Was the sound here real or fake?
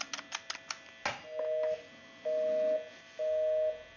real